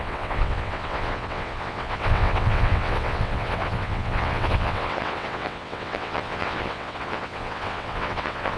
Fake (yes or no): yes